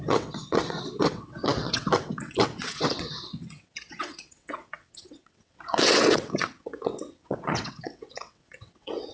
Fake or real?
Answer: fake